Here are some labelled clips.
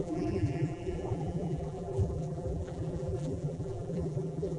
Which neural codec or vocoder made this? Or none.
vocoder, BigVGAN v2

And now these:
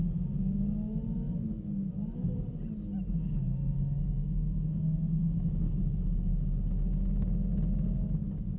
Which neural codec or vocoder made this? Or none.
none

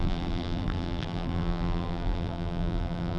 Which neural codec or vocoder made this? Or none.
vocoder, BigVGAN v2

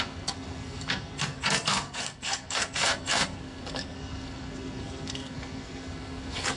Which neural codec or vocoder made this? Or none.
codec, SNAC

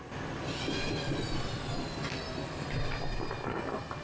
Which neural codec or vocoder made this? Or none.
none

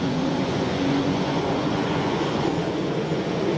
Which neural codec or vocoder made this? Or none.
vocoder, Vocos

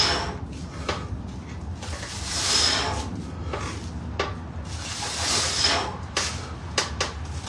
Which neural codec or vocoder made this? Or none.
none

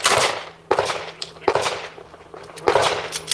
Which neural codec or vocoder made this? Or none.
none